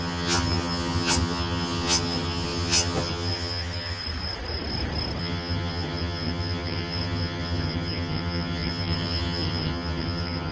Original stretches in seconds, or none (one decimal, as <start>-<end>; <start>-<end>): 4.0-5.2